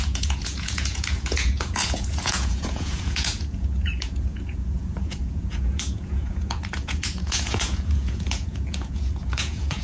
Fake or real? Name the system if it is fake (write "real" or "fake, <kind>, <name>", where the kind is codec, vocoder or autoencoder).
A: fake, vocoder, Vocos